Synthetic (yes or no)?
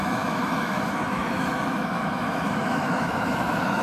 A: yes